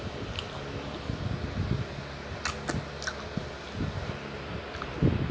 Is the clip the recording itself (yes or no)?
yes